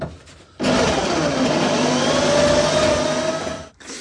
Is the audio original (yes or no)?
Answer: yes